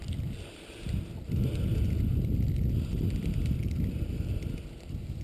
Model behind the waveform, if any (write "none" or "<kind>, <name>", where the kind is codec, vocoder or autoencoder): none